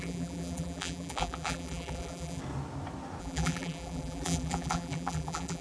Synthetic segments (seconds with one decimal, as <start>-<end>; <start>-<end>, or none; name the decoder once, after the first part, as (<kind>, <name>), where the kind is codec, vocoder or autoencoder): 0.0-2.4 (vocoder, BigVGAN v2); 3.2-5.6